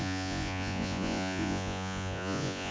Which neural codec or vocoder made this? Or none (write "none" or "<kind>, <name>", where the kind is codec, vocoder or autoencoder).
vocoder, Vocos